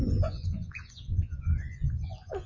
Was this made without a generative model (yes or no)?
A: no